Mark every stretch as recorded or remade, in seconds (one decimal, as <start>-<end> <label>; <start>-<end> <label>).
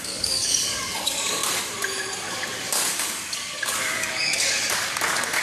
0.0-1.4 remade; 1.4-2.3 recorded; 2.3-5.4 remade